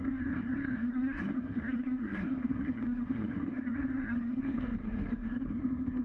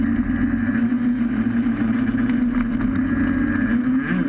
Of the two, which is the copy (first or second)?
first